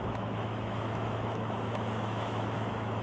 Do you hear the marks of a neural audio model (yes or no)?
yes